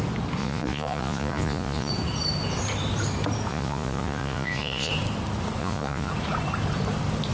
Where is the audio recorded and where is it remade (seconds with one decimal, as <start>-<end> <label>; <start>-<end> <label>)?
0.0-0.4 recorded; 0.4-1.9 remade; 1.9-3.5 recorded; 3.5-4.9 remade; 4.9-5.6 recorded; 5.6-6.1 remade; 6.1-7.3 recorded